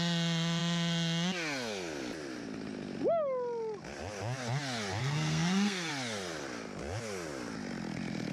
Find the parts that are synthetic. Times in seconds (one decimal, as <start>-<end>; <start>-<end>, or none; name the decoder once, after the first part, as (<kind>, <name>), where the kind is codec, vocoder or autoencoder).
5.0-5.9 (codec, SNAC)